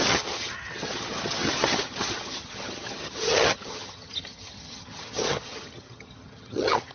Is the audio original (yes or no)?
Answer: no